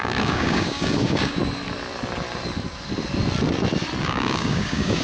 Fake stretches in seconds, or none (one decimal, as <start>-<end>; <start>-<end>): 0.0-1.4; 4.0-5.0